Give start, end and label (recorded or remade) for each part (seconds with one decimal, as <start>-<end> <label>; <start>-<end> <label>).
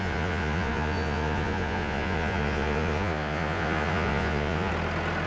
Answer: 0.0-4.7 remade; 4.7-5.3 recorded